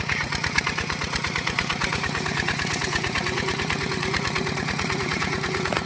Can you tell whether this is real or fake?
fake